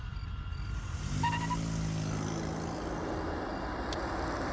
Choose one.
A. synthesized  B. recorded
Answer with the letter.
B